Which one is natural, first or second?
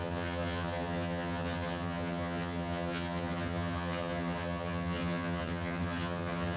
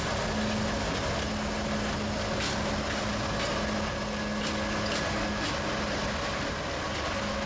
second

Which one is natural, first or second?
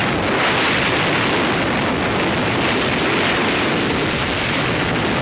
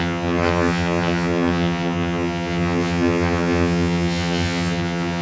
first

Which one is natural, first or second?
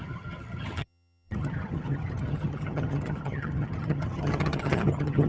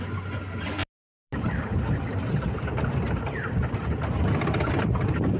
second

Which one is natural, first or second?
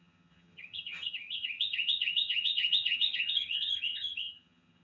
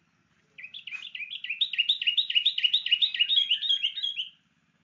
second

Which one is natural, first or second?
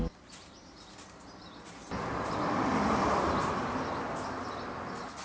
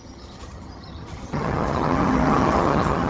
first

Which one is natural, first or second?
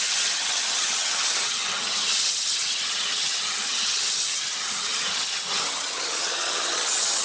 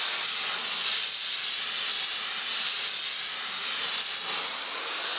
second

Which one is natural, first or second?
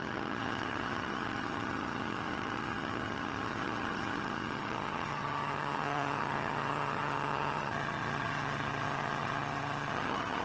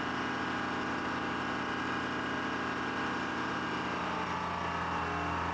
second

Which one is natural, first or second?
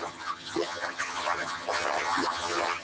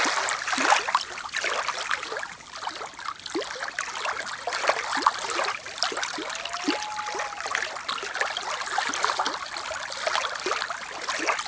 second